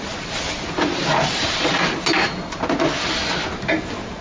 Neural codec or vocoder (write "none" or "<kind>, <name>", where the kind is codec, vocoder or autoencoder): none